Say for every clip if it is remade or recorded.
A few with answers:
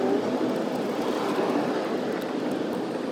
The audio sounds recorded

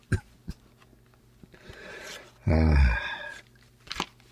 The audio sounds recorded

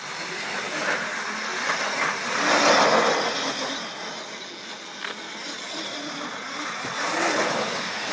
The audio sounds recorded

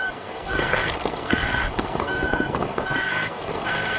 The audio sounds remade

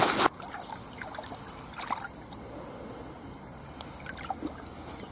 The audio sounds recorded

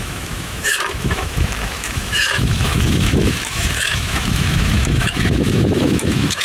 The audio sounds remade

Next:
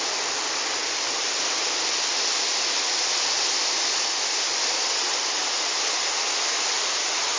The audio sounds recorded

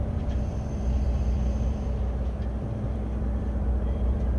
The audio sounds remade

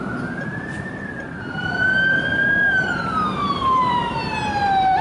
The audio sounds remade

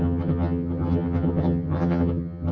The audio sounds remade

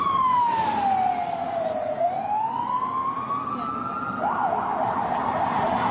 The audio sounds recorded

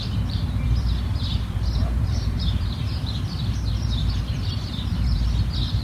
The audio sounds remade